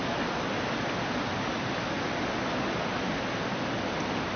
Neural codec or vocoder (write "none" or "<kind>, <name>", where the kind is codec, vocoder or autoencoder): none